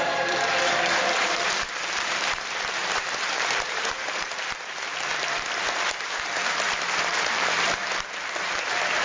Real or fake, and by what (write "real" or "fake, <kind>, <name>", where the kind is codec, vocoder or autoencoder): fake, vocoder, BigVGAN v2